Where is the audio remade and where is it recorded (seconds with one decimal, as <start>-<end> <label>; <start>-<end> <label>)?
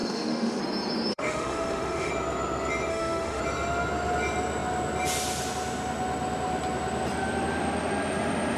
0.0-0.6 remade; 0.6-1.1 recorded; 1.1-2.1 remade; 2.1-2.9 recorded; 2.9-3.4 remade; 3.4-8.6 recorded